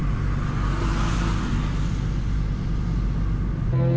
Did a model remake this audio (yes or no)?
no